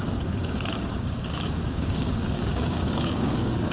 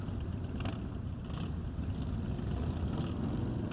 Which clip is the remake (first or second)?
first